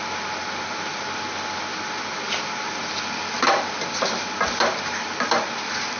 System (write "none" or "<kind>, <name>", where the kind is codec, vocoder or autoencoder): none